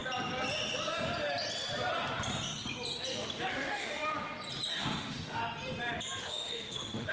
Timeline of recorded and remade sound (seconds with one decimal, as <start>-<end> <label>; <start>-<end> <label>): 0.0-3.5 recorded; 3.5-4.1 remade; 4.1-4.7 recorded; 4.7-5.4 remade; 5.4-6.2 recorded; 6.2-7.1 remade